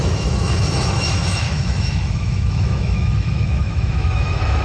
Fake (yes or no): yes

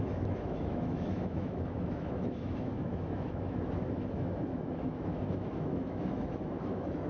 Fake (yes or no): yes